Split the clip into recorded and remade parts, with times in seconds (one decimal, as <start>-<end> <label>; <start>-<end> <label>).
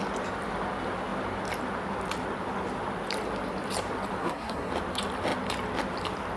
0.0-4.2 recorded; 4.2-4.7 remade; 4.7-6.4 recorded